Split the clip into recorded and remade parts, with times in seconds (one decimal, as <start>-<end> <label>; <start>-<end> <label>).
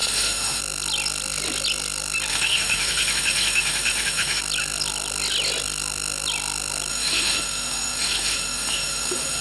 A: 0.0-0.6 remade; 0.6-2.3 recorded; 2.3-4.4 remade; 4.4-6.9 recorded; 6.9-9.4 remade